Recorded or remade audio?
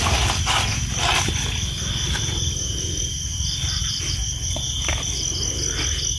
recorded